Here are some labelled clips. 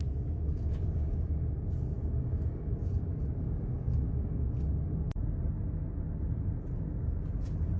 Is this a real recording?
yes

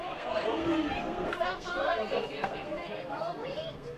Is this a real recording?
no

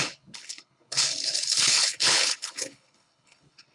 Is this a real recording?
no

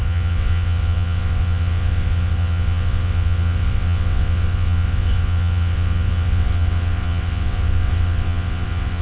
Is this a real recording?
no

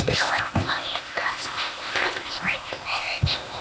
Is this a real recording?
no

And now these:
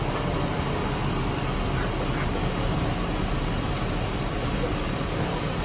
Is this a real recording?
yes